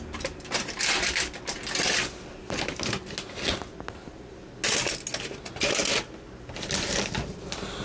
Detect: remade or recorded recorded